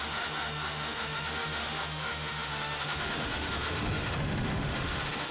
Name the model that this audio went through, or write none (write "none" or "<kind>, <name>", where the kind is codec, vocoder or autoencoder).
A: autoencoder, DAC-VAE